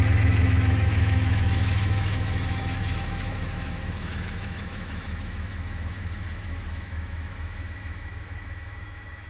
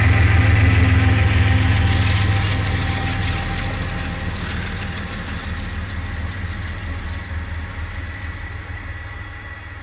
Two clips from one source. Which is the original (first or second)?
second